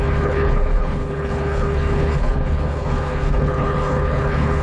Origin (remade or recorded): remade